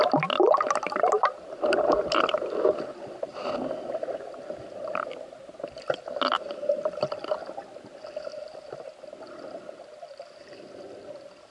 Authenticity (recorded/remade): recorded